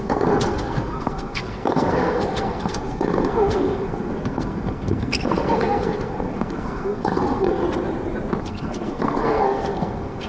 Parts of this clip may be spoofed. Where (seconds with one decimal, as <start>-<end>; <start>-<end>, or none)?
0.0-7.6; 8.4-10.3